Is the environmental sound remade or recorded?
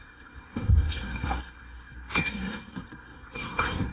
remade